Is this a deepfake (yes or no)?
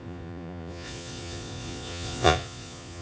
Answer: yes